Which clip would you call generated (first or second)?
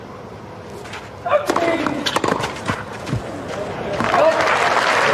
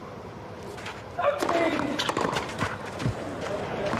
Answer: second